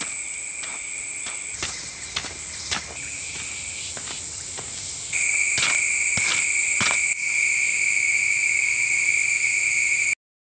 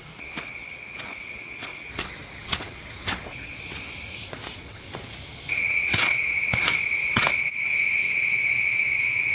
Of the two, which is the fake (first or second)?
second